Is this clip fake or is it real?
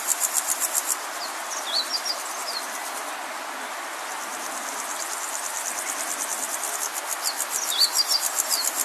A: real